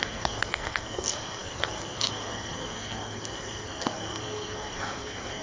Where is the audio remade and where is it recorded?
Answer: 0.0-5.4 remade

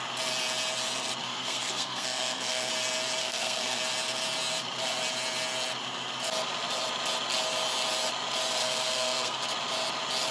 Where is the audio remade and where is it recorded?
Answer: 0.0-1.2 recorded; 1.2-2.7 remade; 2.7-3.2 recorded; 3.2-3.8 remade; 3.8-8.6 recorded; 8.6-9.4 remade; 9.4-10.3 recorded

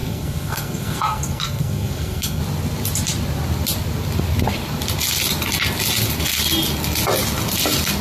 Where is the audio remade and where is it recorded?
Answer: 0.0-2.4 remade; 2.4-8.0 recorded

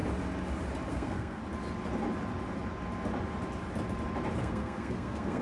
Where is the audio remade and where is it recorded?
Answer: 0.0-0.9 recorded; 0.9-1.4 remade; 1.4-4.4 recorded; 4.4-5.4 remade

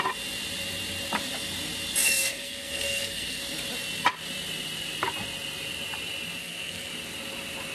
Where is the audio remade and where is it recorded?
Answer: 0.0-2.0 recorded; 2.0-3.4 remade; 3.4-6.4 recorded; 6.4-6.9 remade; 6.9-7.7 recorded

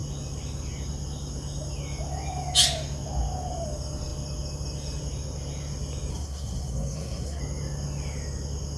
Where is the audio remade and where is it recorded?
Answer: 0.0-6.1 recorded; 6.1-7.4 remade; 7.4-8.8 recorded